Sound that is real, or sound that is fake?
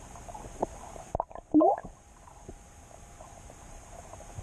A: fake